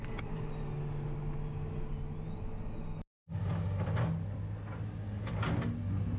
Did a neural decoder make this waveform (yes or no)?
no